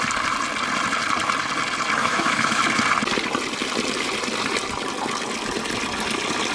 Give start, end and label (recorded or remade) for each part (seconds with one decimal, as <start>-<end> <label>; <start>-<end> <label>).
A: 0.0-2.0 recorded; 2.0-2.6 remade; 2.6-6.5 recorded